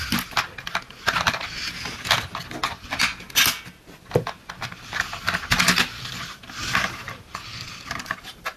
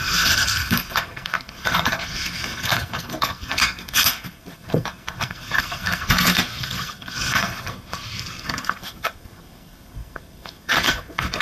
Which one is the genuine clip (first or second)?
first